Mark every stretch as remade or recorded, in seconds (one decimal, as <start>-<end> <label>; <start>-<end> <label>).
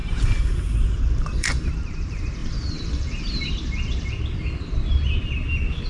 0.0-1.7 remade; 1.7-2.4 recorded; 2.4-3.5 remade; 3.5-5.9 recorded